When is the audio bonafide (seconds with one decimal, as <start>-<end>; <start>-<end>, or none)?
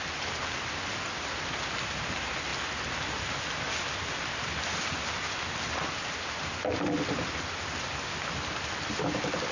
0.0-9.5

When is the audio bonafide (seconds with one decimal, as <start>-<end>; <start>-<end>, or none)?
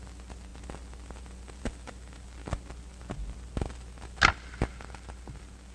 0.0-5.7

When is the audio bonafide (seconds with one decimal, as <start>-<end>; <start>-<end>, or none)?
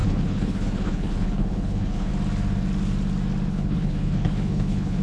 2.1-3.5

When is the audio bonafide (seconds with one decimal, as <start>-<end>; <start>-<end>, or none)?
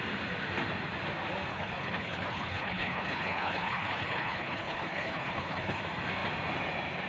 0.0-1.5; 5.8-7.1